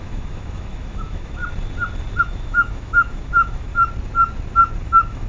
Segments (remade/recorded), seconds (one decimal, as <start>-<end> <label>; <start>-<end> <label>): 0.0-1.4 remade; 1.4-2.2 recorded; 2.2-3.7 remade; 3.7-4.8 recorded; 4.8-5.3 remade